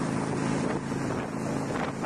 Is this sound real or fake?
real